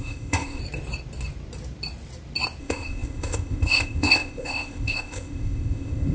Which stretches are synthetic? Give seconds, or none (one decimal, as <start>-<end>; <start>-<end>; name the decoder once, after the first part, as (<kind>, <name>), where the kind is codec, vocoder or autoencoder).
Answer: 0.0-0.6 (codec, ZipCodec); 2.6-6.1